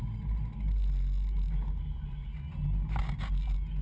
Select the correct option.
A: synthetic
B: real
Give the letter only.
B